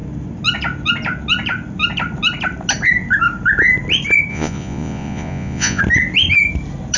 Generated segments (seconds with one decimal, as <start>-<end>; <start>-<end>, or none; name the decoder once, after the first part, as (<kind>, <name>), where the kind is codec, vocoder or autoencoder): 4.3-5.8 (vocoder, Vocos)